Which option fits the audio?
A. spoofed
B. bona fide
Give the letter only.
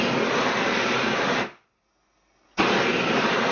B